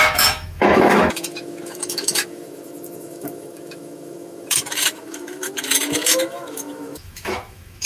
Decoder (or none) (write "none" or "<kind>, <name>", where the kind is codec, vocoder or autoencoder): autoencoder, DAC-VAE